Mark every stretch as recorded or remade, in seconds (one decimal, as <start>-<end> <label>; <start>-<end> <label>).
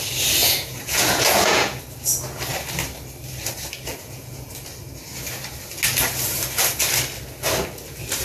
0.0-0.4 recorded; 0.4-1.8 remade; 1.8-3.9 recorded; 3.9-4.5 remade; 4.5-8.2 recorded